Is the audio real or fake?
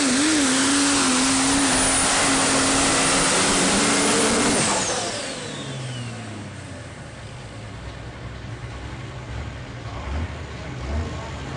real